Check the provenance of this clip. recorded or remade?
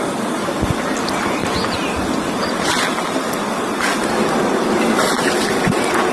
recorded